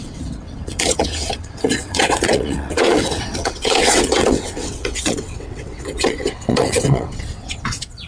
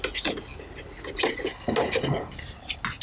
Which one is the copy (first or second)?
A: first